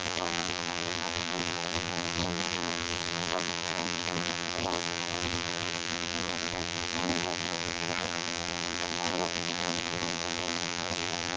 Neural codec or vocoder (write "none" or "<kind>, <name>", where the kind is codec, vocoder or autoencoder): vocoder, BigVGAN v2